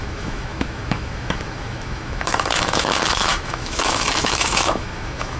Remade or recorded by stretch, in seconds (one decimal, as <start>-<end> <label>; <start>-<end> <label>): 0.0-5.4 remade